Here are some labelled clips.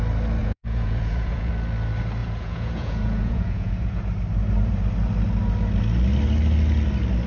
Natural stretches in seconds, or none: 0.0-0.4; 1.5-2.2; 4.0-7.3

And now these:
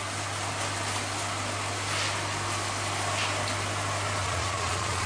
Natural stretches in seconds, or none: 0.0-4.2